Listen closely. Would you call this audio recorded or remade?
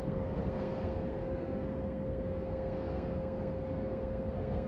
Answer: remade